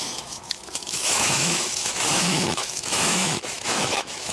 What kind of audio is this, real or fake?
fake